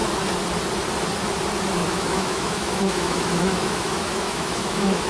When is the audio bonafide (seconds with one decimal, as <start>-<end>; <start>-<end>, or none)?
0.0-1.8